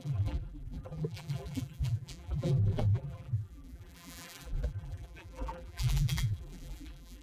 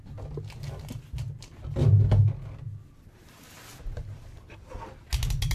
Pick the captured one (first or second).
second